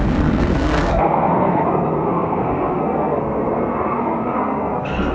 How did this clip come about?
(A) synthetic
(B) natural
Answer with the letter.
A